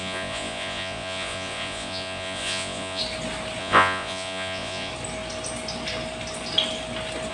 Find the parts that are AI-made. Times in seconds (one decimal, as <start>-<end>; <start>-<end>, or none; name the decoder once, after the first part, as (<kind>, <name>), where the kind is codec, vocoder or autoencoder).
0.0-3.0 (vocoder, Vocos); 3.6-4.9